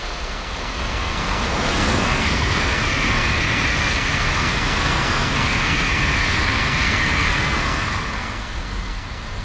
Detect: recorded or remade remade